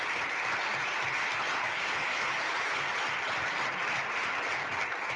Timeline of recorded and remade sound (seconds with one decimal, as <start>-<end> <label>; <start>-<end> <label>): 0.0-1.6 recorded; 1.6-2.8 remade; 2.8-5.2 recorded